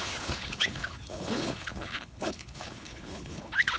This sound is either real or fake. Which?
fake